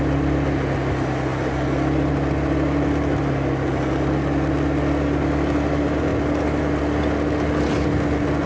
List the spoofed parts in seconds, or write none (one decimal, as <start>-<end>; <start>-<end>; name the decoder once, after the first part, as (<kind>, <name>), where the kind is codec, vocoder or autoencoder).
none